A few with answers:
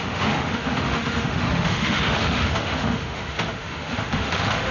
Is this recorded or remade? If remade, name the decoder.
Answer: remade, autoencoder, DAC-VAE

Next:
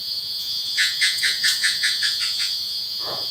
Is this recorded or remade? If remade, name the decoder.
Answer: remade, vocoder, Vocos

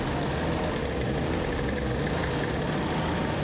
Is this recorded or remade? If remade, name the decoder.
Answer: recorded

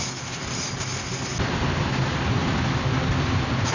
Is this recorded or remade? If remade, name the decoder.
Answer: recorded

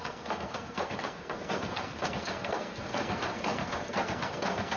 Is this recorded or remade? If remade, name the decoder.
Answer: remade, codec, SNAC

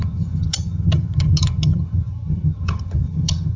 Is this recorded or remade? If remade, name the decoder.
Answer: remade, vocoder, HiFi-GAN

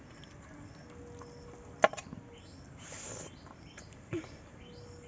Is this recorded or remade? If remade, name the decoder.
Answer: recorded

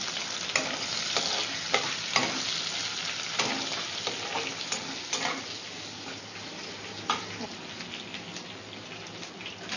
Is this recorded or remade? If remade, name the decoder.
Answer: recorded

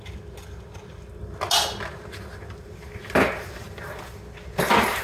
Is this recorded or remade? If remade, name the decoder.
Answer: recorded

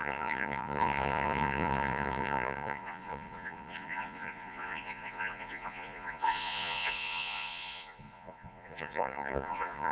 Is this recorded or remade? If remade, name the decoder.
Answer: remade, vocoder, Vocos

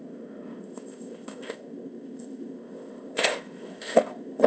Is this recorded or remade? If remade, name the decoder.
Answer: remade, codec, ZipCodec